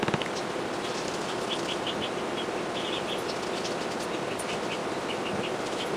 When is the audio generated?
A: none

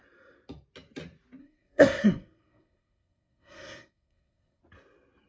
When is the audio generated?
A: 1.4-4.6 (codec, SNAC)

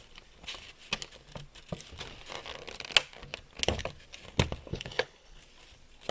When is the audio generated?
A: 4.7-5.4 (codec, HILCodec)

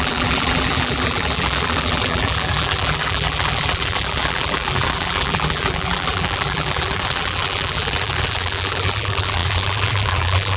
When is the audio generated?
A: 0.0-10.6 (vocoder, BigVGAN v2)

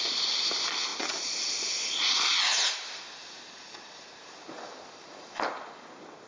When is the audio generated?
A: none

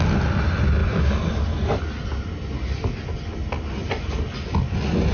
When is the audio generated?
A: none